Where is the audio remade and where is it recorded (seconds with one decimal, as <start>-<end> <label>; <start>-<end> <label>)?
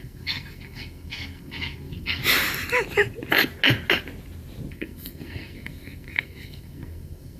0.0-2.2 remade; 2.2-4.7 recorded; 4.7-7.4 remade